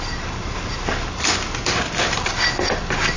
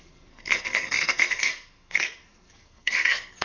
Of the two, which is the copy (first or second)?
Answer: second